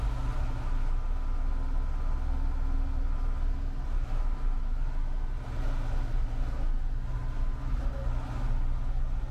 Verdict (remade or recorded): recorded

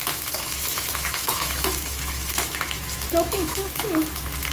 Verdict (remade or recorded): remade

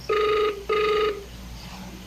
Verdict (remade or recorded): remade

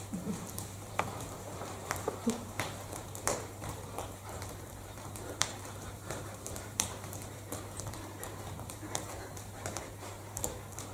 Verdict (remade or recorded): remade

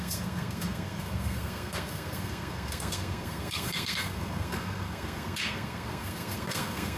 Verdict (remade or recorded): remade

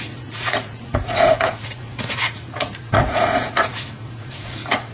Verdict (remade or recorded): remade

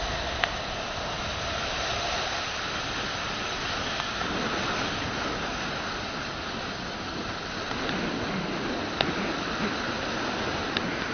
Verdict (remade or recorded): recorded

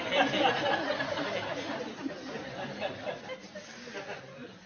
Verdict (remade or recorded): recorded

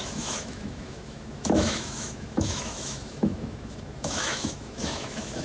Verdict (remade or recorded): remade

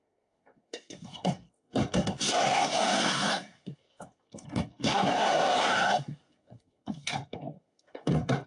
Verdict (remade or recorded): remade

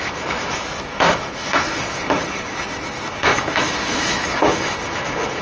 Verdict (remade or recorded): remade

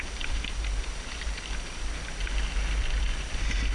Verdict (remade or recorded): recorded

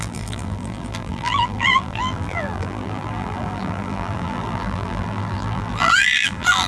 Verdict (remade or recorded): remade